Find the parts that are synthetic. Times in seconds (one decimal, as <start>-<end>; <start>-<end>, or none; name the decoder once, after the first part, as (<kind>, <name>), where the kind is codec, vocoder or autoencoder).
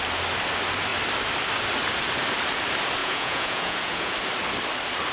3.0-4.1 (vocoder, Vocos)